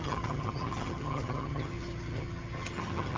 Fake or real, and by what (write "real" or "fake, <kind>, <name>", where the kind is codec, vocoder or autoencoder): fake, vocoder, HiFi-GAN